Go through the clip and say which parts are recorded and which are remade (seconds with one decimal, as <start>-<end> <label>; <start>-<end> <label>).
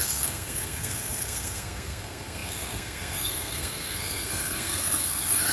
0.0-5.5 remade